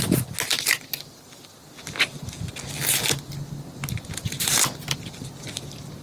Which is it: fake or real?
real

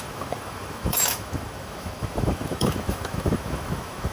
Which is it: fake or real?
fake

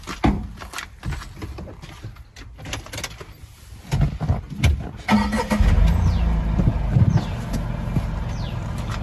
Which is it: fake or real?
real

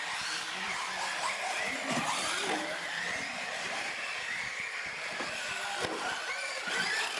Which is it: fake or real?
real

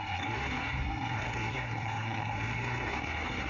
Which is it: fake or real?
fake